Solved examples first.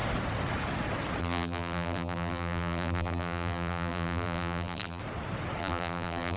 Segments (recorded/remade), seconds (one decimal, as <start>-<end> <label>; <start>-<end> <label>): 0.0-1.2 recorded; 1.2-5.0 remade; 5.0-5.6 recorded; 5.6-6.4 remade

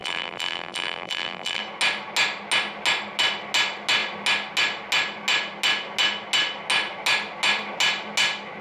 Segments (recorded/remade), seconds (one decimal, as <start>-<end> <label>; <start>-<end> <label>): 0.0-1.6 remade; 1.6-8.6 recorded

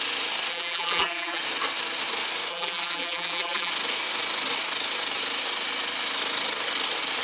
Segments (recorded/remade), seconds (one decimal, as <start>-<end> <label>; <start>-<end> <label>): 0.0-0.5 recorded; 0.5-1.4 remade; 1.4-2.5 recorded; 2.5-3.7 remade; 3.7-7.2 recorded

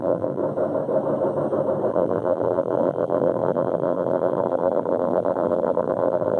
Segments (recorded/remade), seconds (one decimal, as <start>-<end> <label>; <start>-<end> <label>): 0.0-0.4 remade; 0.4-1.9 recorded; 1.9-6.4 remade